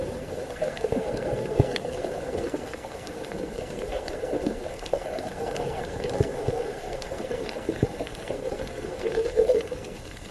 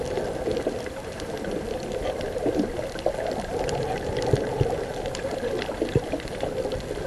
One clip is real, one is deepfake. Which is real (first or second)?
second